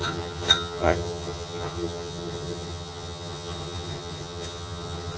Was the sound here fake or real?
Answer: fake